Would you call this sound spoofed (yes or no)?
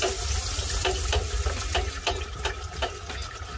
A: no